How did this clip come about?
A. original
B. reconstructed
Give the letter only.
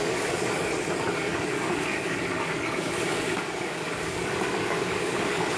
B